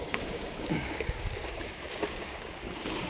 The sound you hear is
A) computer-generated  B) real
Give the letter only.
A